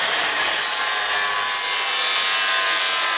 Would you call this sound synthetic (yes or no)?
no